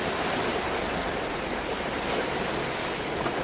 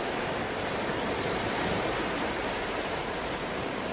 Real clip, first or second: first